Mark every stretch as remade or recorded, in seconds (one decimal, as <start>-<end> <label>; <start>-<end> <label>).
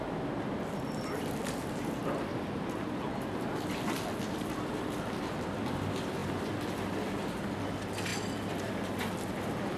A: 0.0-9.8 recorded